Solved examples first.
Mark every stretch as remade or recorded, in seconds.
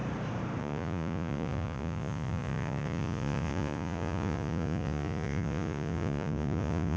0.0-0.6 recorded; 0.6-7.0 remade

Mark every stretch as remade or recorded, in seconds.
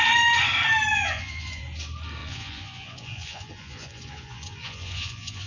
0.0-0.9 recorded; 0.9-1.6 remade; 1.6-2.2 recorded; 2.2-5.5 remade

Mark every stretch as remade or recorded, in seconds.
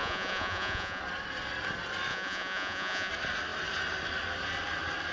0.0-1.0 remade; 1.0-2.1 recorded; 2.1-3.1 remade; 3.1-5.1 recorded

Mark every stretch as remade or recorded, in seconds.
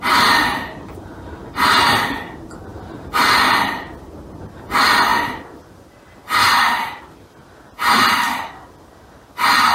0.0-9.7 recorded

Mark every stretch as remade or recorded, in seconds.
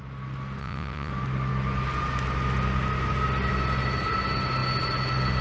0.0-0.6 recorded; 0.6-1.1 remade; 1.1-5.4 recorded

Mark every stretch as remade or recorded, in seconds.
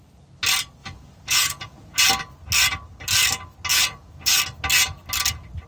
0.0-0.8 recorded; 0.8-2.0 remade; 2.0-3.7 recorded; 3.7-4.4 remade; 4.4-5.7 recorded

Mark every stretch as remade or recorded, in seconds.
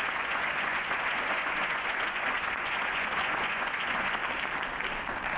0.0-4.2 remade; 4.2-5.4 recorded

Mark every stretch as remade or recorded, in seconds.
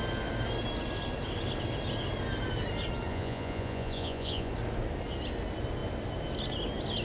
0.0-3.1 recorded; 3.1-4.5 remade; 4.5-7.0 recorded